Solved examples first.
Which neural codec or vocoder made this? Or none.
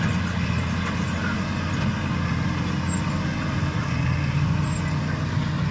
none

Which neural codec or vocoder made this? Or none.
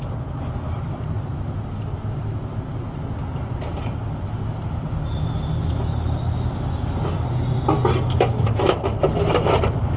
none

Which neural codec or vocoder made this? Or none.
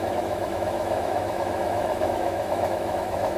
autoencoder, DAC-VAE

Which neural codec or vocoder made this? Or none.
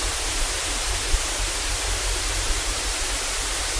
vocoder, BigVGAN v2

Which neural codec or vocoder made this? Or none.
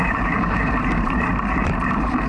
vocoder, BigVGAN v2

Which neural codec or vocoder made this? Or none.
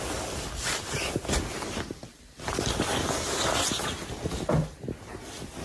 none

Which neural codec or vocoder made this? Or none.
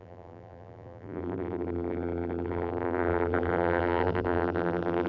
vocoder, BigVGAN v2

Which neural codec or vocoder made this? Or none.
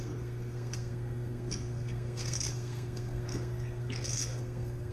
codec, SNAC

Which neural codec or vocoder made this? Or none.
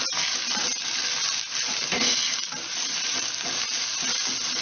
none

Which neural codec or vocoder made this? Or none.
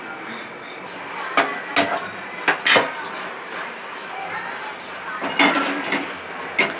none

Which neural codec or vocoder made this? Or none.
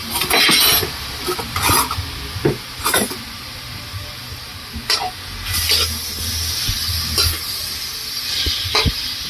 none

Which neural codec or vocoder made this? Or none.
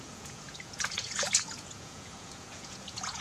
vocoder, Vocos